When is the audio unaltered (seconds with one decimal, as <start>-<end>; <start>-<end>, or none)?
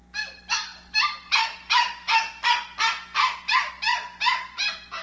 0.0-5.0